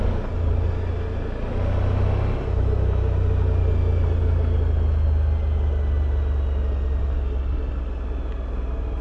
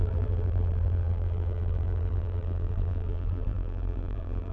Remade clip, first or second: second